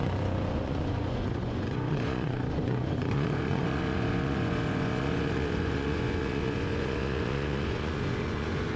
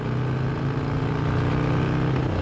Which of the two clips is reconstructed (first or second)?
first